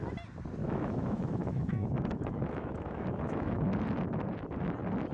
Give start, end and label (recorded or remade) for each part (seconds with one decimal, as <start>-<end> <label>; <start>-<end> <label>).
0.0-0.6 recorded; 0.6-3.7 remade; 3.7-5.1 recorded